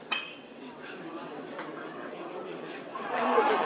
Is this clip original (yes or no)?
no